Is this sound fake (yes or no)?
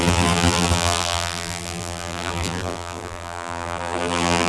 yes